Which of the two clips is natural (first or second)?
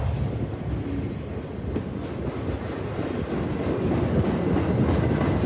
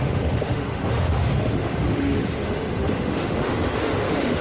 first